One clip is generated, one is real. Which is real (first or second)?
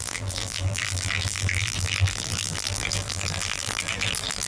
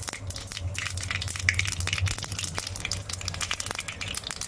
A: second